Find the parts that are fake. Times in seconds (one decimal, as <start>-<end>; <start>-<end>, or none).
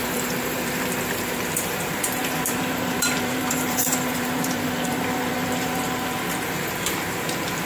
0.0-7.7